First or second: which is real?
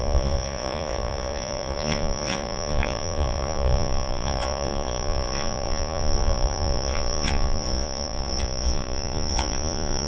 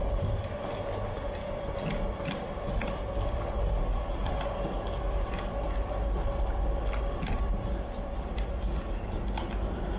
second